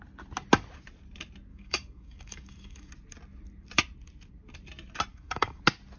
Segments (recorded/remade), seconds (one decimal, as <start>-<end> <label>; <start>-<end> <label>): 0.0-1.5 recorded; 1.5-2.9 remade; 2.9-5.1 recorded; 5.1-5.6 remade; 5.6-6.0 recorded